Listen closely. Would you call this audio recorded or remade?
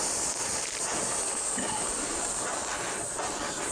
recorded